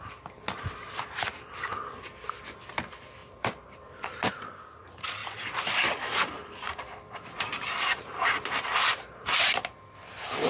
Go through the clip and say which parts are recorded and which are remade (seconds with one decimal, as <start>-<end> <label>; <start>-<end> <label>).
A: 0.0-3.2 recorded; 3.2-4.3 remade; 4.3-5.2 recorded; 5.2-9.5 remade; 9.5-10.5 recorded